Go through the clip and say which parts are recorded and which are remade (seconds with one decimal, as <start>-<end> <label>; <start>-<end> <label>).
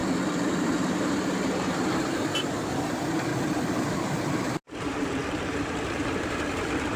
0.0-0.6 recorded; 0.6-3.3 remade; 3.3-3.9 recorded; 3.9-7.0 remade